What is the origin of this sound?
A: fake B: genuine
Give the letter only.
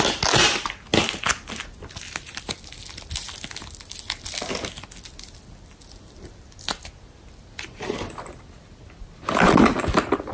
B